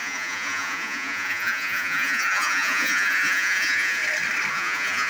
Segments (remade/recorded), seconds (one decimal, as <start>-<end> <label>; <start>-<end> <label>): 0.0-4.0 remade; 4.0-4.5 recorded; 4.5-5.1 remade